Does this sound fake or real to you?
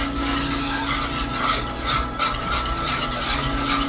real